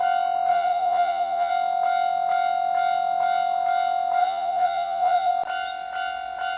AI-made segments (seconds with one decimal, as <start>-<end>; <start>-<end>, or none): 0.5-1.5; 4.2-5.3

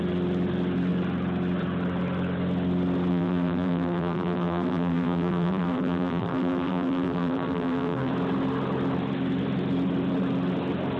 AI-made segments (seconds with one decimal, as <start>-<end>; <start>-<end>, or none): 3.1-8.1

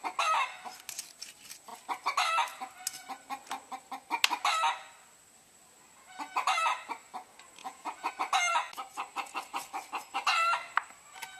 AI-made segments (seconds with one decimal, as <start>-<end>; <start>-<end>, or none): 7.6-8.1

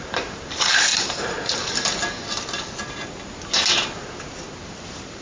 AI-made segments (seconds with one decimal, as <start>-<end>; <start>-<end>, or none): 0.0-0.9; 4.0-5.2